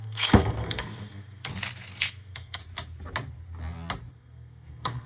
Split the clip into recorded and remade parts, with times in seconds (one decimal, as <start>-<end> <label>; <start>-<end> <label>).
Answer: 0.0-1.5 remade; 1.5-2.1 recorded; 2.1-2.6 remade; 2.6-4.1 recorded; 4.1-5.1 remade